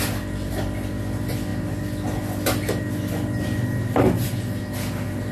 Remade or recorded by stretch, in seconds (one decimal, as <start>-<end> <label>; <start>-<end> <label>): 0.0-5.3 recorded